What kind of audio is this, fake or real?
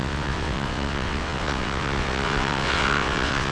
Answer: fake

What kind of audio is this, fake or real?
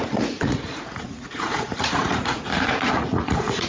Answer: fake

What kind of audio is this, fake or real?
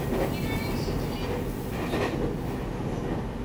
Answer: real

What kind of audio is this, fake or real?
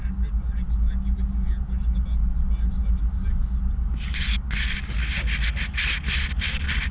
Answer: real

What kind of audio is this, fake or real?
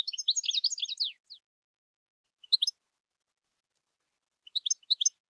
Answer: real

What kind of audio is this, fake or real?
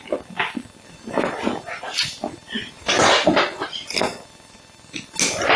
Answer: real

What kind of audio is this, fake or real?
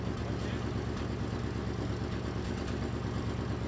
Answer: real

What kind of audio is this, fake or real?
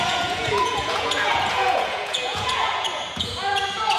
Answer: fake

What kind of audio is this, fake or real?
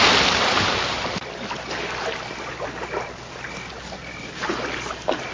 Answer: real